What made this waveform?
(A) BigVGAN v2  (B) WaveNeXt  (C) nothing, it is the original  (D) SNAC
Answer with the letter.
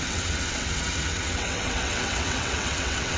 B